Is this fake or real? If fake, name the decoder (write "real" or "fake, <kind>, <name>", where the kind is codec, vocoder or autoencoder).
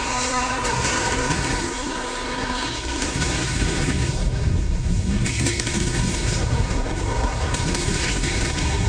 fake, codec, SNAC